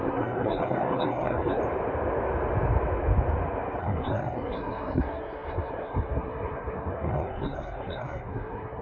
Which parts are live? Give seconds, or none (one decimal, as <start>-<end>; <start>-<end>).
1.6-3.8

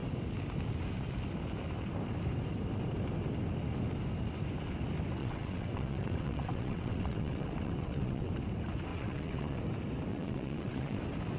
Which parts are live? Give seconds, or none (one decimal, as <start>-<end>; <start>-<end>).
0.0-5.2; 8.3-8.9; 9.6-10.1; 11.0-11.4